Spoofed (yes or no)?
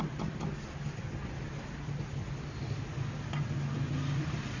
no